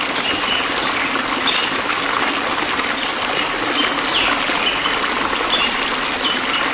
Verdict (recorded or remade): recorded